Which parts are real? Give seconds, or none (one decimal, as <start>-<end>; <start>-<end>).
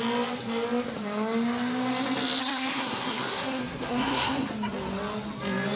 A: 0.0-2.4; 4.5-5.8